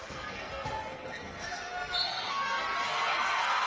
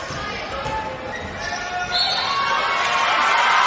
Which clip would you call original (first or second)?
second